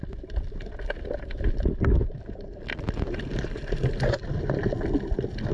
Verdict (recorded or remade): recorded